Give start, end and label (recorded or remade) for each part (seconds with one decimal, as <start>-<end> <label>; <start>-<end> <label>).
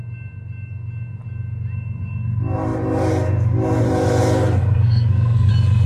0.0-4.6 recorded; 4.6-5.5 remade; 5.5-5.9 recorded